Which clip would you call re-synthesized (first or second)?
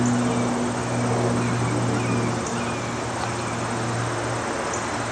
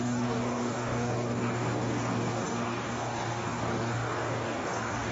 second